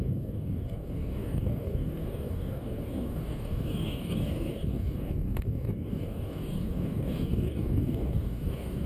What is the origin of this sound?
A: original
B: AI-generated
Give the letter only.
B